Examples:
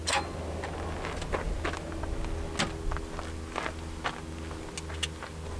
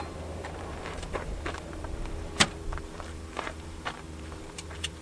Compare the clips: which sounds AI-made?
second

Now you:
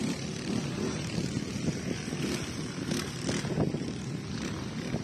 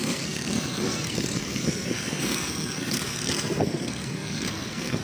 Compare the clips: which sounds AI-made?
second